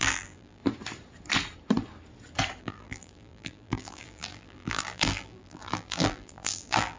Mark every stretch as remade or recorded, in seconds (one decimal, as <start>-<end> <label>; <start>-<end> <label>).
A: 0.0-0.6 remade; 0.6-2.6 recorded; 2.6-7.0 remade